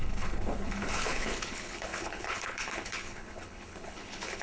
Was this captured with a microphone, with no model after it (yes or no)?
no